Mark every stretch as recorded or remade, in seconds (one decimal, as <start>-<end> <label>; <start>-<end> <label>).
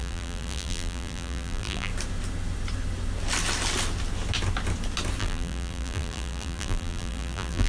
0.0-1.9 remade; 1.9-5.2 recorded; 5.2-7.7 remade